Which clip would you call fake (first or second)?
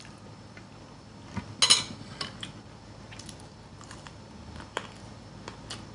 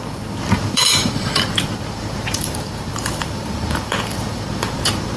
second